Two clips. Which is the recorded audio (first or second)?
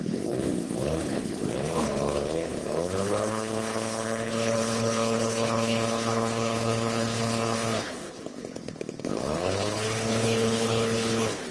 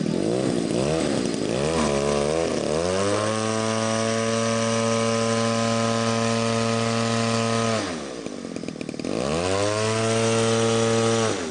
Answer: second